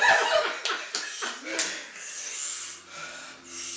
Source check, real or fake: real